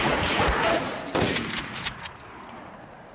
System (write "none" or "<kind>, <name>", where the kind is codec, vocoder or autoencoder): vocoder, Vocos